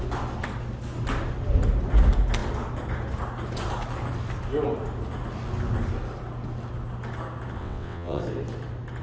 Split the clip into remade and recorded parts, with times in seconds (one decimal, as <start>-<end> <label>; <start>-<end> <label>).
0.0-7.6 recorded; 7.6-8.2 remade; 8.2-9.0 recorded